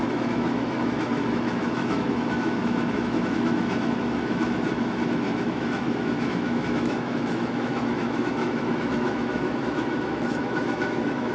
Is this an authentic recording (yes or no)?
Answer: no